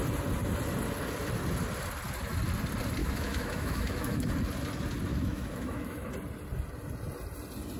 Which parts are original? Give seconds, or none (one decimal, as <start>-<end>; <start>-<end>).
0.0-3.0; 4.3-5.1; 6.1-7.8